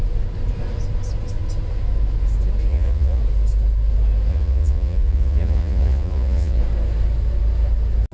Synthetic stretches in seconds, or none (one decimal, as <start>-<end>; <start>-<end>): 2.7-3.2; 4.3-6.6